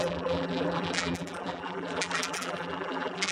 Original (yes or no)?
no